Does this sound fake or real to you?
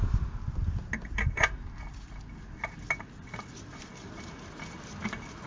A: real